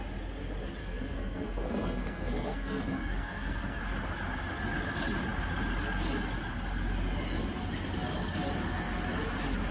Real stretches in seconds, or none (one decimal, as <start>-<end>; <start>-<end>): 0.0-0.8; 3.8-9.7

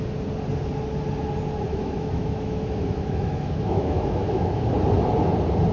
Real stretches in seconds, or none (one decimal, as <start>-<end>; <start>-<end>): 0.0-1.7; 4.7-5.7

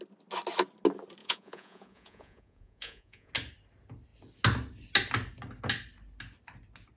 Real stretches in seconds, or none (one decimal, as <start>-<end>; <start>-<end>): 0.0-1.2; 3.3-7.0